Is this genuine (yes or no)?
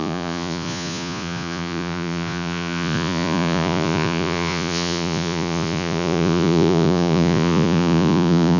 no